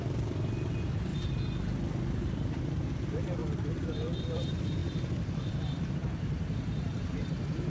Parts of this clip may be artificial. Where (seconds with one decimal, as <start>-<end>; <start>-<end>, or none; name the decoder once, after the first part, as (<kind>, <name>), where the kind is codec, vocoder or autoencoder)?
0.0-1.1 (vocoder, BigVGAN v2); 2.0-7.7